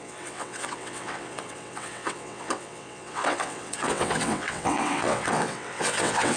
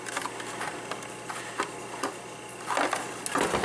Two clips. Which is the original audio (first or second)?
second